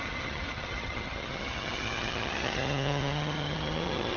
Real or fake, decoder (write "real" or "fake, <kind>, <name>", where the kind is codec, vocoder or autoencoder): fake, vocoder, HiFi-GAN